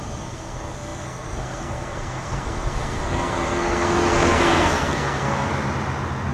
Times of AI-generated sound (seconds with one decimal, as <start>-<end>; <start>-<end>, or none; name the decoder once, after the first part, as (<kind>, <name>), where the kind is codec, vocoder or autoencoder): 0.0-5.5 (codec, SNAC)